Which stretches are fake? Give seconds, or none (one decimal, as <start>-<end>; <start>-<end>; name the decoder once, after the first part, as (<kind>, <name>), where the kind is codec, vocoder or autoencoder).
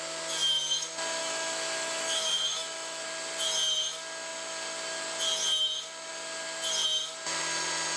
1.2-3.0 (autoencoder, DAC-VAE)